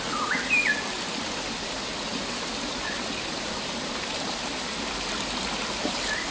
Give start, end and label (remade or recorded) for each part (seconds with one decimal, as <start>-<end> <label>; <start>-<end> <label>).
0.0-2.1 recorded; 2.1-4.6 remade; 4.6-6.3 recorded